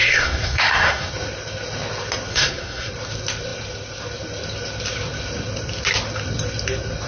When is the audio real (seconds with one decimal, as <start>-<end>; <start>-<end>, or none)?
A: 1.1-2.3; 2.9-7.1